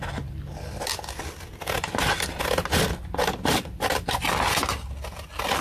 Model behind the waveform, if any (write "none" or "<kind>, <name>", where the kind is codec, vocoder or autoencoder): none